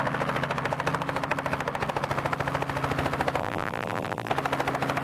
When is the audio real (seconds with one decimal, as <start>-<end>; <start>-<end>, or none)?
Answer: 0.0-3.4; 4.3-5.0